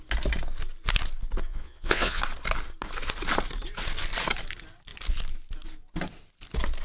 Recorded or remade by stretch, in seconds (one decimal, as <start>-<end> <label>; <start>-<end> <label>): 0.0-1.5 recorded; 1.5-2.2 remade; 2.2-6.8 recorded